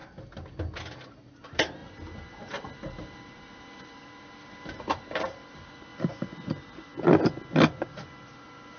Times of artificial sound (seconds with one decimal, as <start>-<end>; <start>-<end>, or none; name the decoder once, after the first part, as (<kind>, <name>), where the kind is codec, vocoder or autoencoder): 1.2-5.9 (vocoder, BigVGAN v2); 6.5-6.9; 7.9-8.8